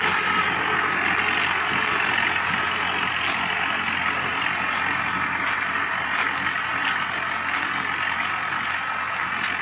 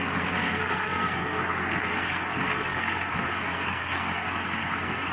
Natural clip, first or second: first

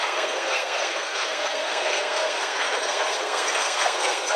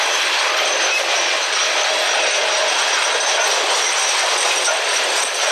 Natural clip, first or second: second